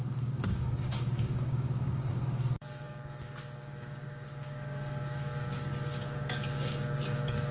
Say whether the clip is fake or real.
fake